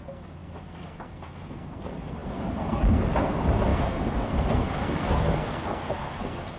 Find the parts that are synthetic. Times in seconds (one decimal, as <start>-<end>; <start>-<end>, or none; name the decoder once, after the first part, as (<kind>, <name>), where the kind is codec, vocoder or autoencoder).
0.0-6.6 (codec, SNAC)